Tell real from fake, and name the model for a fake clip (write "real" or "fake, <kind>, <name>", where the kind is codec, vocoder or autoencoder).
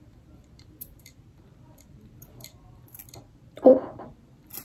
fake, vocoder, BigVGAN v2